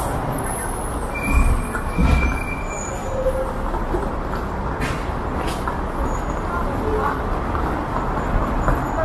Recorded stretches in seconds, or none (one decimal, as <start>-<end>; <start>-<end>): 0.0-9.0